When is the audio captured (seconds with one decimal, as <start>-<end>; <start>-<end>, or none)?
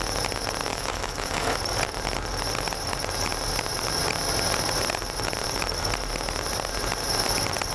0.0-0.7; 1.6-7.7